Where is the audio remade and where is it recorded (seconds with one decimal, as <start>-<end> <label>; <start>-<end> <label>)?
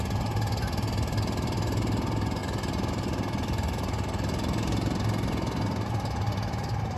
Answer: 0.0-7.0 recorded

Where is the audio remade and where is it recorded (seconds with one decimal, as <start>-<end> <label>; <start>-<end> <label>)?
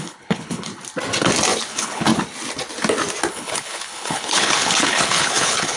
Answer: 0.0-0.7 remade; 0.7-1.7 recorded; 1.7-2.1 remade; 2.1-3.3 recorded; 3.3-5.8 remade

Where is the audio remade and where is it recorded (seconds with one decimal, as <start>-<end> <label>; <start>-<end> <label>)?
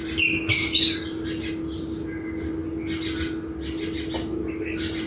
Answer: 0.0-5.1 recorded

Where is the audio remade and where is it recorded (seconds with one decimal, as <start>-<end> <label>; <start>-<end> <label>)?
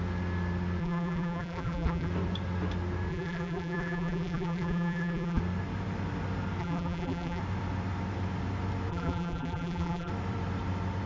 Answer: 0.0-0.8 recorded; 0.8-2.1 remade; 2.1-3.1 recorded; 3.1-5.4 remade; 5.4-6.6 recorded; 6.6-7.4 remade; 7.4-8.9 recorded; 8.9-10.1 remade; 10.1-11.1 recorded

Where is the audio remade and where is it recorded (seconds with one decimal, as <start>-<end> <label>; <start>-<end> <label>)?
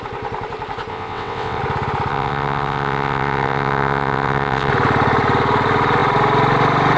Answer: 0.0-0.9 recorded; 0.9-1.6 remade; 1.6-2.1 recorded; 2.1-4.7 remade; 4.7-7.0 recorded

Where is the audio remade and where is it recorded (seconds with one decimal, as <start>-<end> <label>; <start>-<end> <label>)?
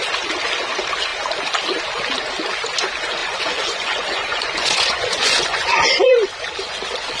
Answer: 0.0-3.2 recorded; 3.2-6.3 remade; 6.3-7.2 recorded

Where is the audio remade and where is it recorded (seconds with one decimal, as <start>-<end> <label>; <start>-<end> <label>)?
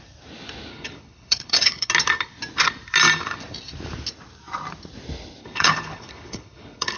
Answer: 0.0-0.7 recorded; 0.7-1.9 remade; 1.9-5.4 recorded; 5.4-7.0 remade